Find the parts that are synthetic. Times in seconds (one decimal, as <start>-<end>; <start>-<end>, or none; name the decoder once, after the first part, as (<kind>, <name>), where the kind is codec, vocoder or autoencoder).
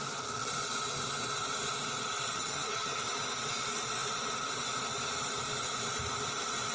2.3-3.0 (vocoder, HiFi-GAN)